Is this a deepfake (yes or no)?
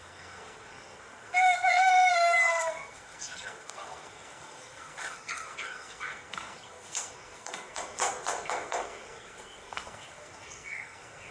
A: yes